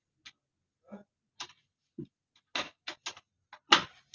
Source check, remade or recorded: recorded